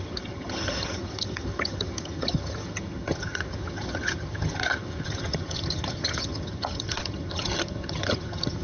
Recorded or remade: remade